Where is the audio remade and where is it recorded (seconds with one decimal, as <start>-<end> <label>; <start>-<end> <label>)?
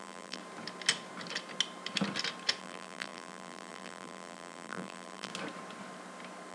0.0-0.4 remade; 0.4-2.6 recorded; 2.6-5.3 remade; 5.3-6.5 recorded